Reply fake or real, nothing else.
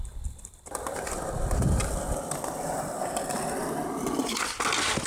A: real